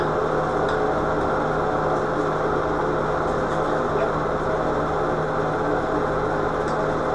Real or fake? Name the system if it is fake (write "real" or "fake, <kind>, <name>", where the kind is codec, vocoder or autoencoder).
real